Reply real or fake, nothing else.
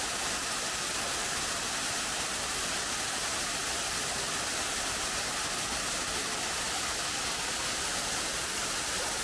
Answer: real